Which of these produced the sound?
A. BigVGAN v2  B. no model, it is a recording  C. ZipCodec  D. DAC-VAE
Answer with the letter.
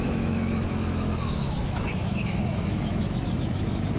D